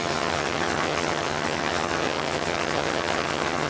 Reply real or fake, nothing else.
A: fake